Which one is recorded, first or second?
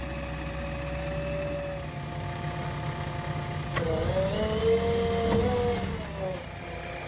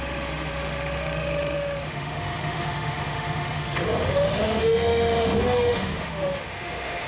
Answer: first